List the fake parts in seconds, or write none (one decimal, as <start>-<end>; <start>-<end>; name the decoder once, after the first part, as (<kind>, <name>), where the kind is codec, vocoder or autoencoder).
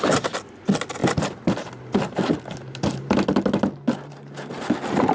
none